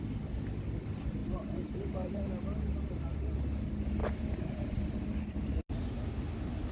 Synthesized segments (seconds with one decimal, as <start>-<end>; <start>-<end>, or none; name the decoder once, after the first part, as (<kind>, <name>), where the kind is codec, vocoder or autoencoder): 1.2-2.3 (vocoder, BigVGAN v2); 4.0-5.7